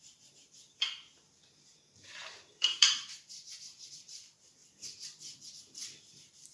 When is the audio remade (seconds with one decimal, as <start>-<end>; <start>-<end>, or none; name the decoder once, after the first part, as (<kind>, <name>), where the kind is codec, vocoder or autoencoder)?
0.0-4.6 (vocoder, BigVGAN v2); 6.0-6.5